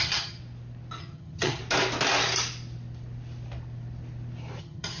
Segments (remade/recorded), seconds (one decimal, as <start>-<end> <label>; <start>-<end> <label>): 0.0-0.4 remade; 0.4-1.0 recorded; 1.0-1.6 remade; 1.6-4.6 recorded; 4.6-5.0 remade